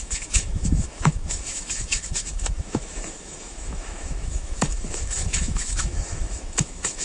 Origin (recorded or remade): remade